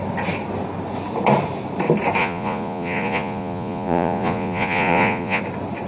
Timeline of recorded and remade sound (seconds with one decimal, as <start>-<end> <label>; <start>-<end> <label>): 0.0-2.2 recorded; 2.2-5.4 remade; 5.4-5.9 recorded